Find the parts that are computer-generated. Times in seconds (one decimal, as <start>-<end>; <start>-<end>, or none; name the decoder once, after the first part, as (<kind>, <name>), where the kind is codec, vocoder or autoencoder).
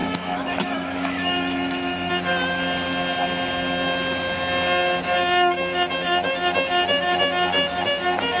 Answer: 0.0-2.1 (autoencoder, DAC-VAE)